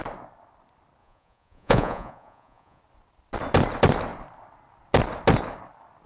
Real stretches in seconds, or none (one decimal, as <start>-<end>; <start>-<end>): 0.0-1.0; 2.8-6.1